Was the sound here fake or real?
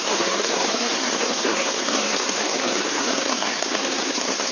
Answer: fake